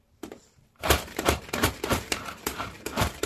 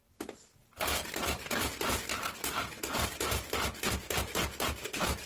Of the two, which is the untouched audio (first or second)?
second